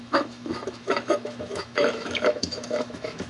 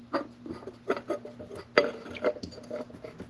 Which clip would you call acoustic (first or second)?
second